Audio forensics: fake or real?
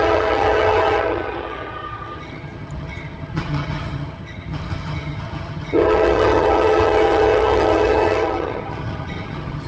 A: fake